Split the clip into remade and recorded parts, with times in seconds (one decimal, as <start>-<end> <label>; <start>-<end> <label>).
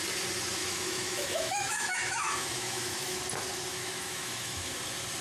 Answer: 0.0-0.6 recorded; 0.6-3.2 remade; 3.2-3.7 recorded; 3.7-4.7 remade; 4.7-5.2 recorded